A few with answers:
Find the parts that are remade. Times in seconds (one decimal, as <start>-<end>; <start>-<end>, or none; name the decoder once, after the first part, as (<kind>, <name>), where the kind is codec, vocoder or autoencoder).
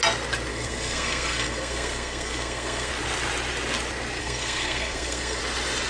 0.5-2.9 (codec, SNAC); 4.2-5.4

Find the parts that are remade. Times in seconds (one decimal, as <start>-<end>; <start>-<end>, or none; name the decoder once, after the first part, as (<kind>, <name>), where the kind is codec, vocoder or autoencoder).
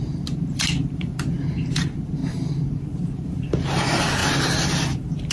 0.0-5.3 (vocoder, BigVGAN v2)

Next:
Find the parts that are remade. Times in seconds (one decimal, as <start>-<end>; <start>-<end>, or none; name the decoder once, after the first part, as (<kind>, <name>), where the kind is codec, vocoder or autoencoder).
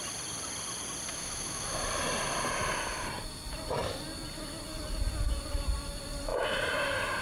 1.1-1.8 (autoencoder, DAC-VAE)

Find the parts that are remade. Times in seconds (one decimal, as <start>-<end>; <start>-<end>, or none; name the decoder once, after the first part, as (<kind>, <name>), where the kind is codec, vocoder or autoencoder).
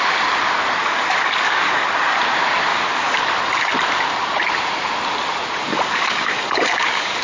0.8-2.2 (codec, DAC); 2.7-3.2; 5.6-7.2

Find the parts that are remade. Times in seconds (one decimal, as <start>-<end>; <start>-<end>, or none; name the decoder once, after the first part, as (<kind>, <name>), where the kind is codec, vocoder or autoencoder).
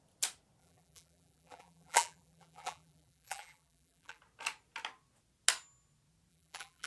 0.6-4.2 (vocoder, BigVGAN v2); 6.3-6.9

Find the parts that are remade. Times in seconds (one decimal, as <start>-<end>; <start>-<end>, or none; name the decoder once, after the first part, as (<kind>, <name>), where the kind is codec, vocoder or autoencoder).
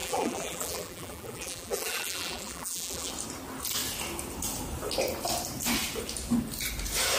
0.0-3.1 (vocoder, BigVGAN v2)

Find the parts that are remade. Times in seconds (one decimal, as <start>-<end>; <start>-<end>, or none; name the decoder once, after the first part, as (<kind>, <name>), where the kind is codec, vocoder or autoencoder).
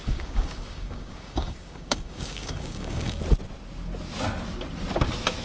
0.0-3.2 (codec, DAC)